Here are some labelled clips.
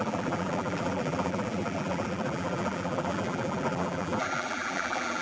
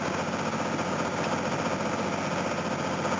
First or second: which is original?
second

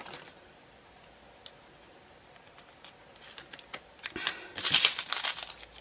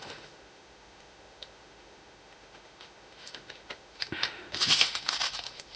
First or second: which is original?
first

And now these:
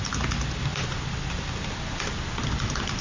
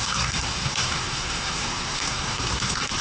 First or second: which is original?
first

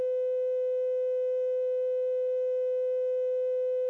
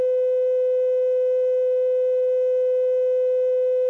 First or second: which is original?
first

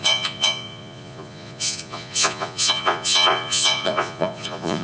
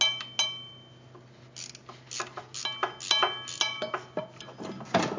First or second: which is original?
second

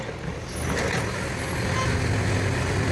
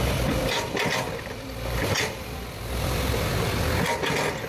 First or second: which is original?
first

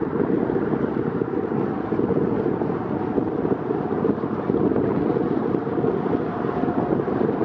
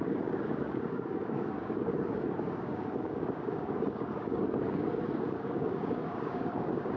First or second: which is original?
first